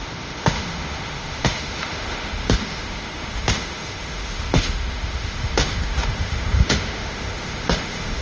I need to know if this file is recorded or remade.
remade